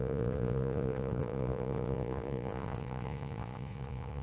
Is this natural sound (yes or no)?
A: no